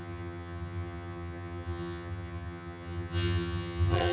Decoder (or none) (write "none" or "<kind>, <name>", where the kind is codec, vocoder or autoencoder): vocoder, HiFi-GAN